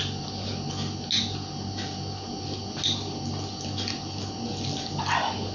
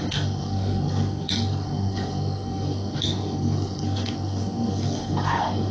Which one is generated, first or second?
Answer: second